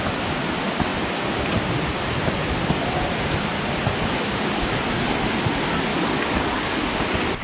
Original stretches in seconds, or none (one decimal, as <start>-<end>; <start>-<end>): 0.0-5.9; 6.7-7.4